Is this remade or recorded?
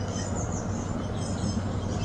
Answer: recorded